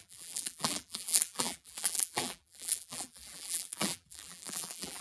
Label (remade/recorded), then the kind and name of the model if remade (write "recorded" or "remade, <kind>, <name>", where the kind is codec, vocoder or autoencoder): remade, vocoder, BigVGAN v2